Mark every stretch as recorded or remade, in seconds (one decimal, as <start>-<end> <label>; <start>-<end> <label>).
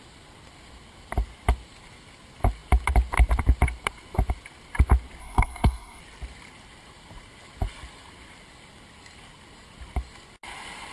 0.0-5.2 recorded; 5.2-6.0 remade; 6.0-10.9 recorded